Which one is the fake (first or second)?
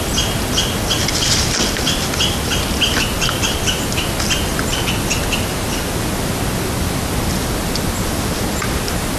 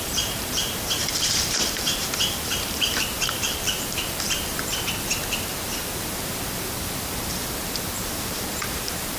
second